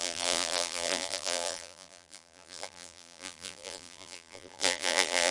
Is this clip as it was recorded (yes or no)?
no